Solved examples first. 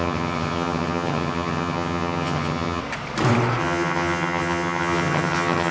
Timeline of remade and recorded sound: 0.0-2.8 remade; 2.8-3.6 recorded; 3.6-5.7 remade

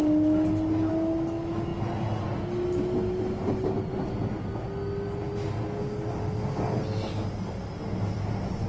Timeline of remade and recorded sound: 0.0-8.7 recorded

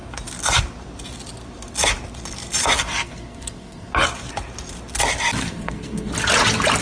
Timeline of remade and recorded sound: 0.0-2.9 recorded; 2.9-3.9 remade; 3.9-5.4 recorded; 5.4-6.1 remade; 6.1-6.8 recorded

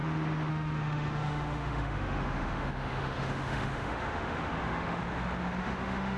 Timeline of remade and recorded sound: 0.0-0.5 recorded; 0.5-5.0 remade; 5.0-5.6 recorded; 5.6-6.2 remade

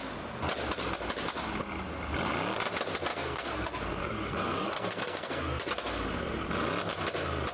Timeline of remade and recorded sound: 0.0-3.1 recorded; 3.1-5.7 remade; 5.7-7.5 recorded

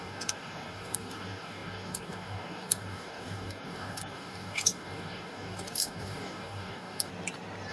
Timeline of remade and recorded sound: 0.0-7.1 remade; 7.1-7.7 recorded